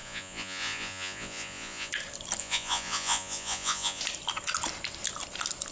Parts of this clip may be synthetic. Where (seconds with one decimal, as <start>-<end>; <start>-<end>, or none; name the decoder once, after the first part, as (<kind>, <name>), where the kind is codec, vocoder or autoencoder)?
0.0-1.9 (vocoder, Vocos); 2.4-4.0